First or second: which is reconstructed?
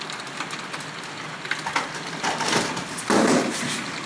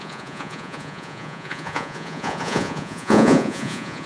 second